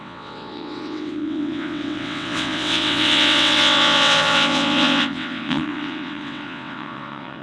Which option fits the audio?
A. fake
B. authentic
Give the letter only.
A